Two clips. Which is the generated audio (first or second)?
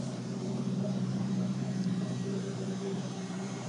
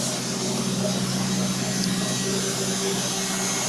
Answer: first